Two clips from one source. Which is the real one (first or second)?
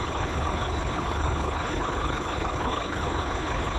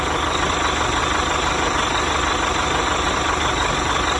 second